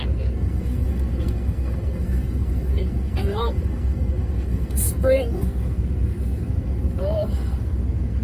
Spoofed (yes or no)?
yes